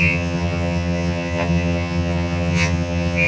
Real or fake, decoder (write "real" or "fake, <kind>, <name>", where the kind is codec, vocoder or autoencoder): fake, vocoder, HiFi-GAN